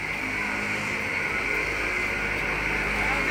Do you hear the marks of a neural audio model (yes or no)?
no